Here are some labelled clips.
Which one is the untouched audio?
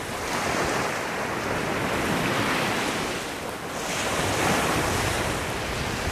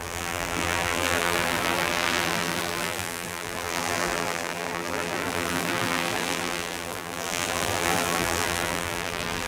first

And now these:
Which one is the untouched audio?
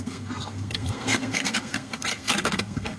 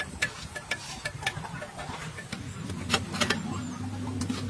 second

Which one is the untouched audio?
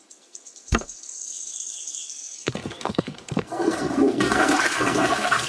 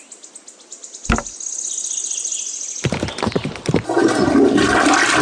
second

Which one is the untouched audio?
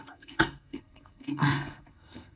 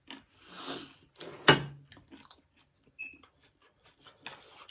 second